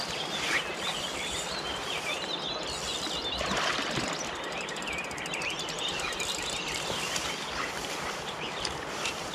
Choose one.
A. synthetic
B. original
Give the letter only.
A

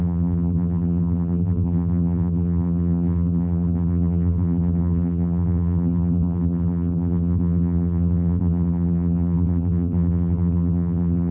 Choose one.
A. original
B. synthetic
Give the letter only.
B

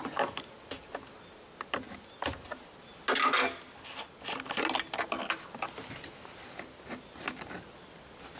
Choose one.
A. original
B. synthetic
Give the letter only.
A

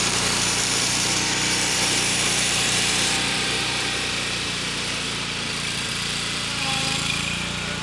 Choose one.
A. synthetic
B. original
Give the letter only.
A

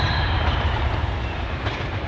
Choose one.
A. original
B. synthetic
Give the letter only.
B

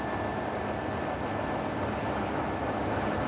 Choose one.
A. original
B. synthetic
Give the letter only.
A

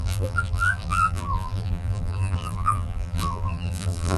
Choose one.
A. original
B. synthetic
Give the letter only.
B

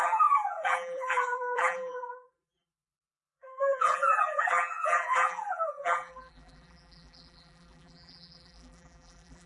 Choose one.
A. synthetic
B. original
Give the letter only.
A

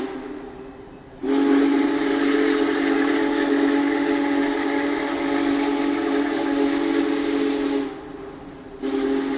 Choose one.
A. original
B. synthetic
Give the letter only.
A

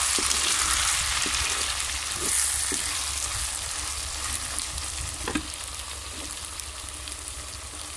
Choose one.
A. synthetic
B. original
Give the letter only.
B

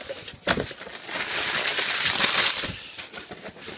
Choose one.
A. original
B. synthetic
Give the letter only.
B